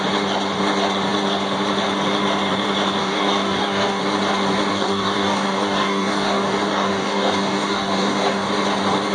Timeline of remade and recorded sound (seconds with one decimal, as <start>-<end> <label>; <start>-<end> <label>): 0.0-3.0 recorded; 3.0-4.0 remade; 4.0-4.7 recorded; 4.7-8.5 remade; 8.5-9.1 recorded